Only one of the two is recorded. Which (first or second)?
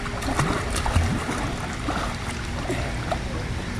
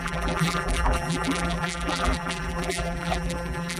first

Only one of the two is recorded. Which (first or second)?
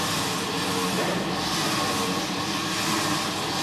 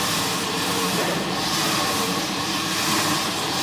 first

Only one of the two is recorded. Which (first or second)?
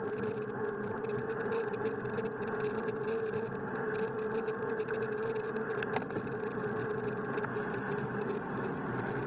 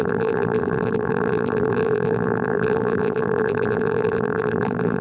first